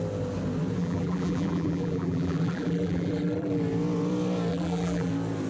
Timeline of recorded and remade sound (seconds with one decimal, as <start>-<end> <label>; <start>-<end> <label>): 0.0-0.8 recorded; 0.8-3.6 remade; 3.6-4.5 recorded; 4.5-5.1 remade; 5.1-5.5 recorded